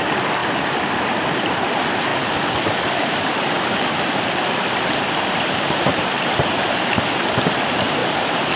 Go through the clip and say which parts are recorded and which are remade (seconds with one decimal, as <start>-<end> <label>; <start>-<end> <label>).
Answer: 0.0-0.4 recorded; 0.4-1.2 remade; 1.2-2.1 recorded; 2.1-6.5 remade; 6.5-8.0 recorded; 8.0-8.6 remade